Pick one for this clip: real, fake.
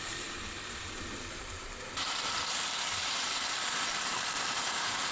fake